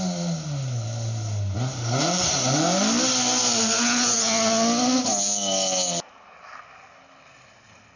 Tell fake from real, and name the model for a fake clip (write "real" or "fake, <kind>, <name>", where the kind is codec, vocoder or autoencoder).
real